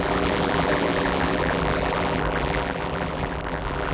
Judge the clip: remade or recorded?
remade